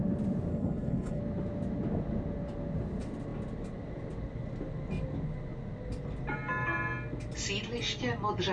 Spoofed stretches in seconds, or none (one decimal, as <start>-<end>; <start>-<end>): 0.5-1.2